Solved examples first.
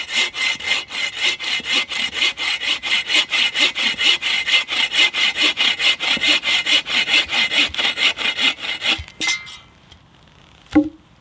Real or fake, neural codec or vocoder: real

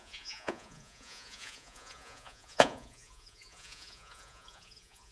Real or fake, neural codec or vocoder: fake, vocoder, Vocos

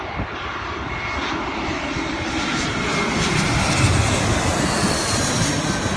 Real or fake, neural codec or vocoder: real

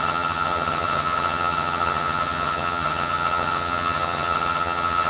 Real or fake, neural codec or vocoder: fake, vocoder, HiFi-GAN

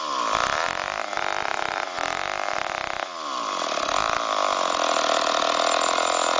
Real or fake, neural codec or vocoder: real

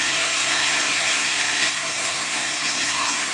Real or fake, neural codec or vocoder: fake, codec, SNAC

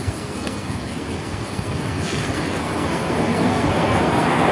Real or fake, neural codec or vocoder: fake, codec, SNAC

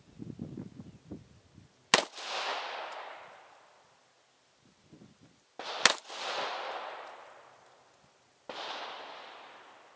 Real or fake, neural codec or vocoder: real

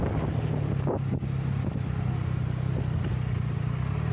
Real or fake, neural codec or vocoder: real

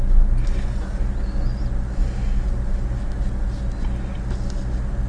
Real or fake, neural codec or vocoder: real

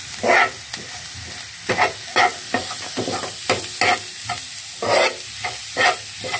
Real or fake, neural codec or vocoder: real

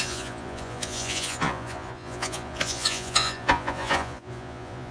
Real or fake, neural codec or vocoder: fake, vocoder, Vocos